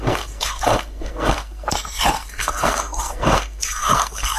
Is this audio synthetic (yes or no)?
yes